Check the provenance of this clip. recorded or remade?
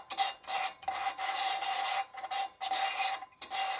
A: recorded